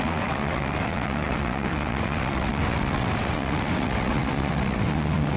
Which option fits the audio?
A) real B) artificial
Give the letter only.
B